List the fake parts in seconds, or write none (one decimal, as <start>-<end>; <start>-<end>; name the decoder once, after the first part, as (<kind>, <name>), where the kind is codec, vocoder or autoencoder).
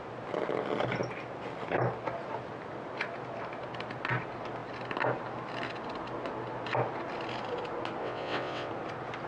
8.0-8.7 (vocoder, WaveNeXt)